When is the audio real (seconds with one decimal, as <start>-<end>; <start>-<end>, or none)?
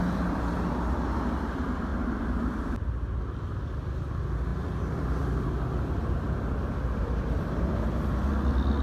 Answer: 0.0-8.8